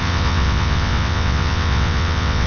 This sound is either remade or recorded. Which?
remade